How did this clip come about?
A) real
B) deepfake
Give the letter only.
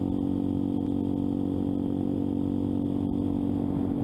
A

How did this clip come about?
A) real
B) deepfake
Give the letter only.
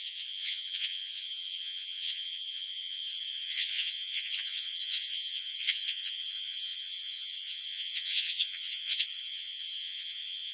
B